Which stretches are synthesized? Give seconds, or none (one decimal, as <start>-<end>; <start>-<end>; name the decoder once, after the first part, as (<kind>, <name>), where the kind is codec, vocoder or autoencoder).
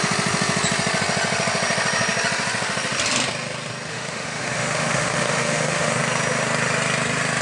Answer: 3.9-5.9 (autoencoder, DAC-VAE)